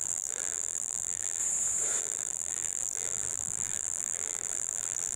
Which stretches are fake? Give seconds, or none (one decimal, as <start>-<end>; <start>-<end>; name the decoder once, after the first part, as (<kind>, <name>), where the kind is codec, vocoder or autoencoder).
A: 0.0-1.4 (vocoder, BigVGAN v2); 2.0-5.2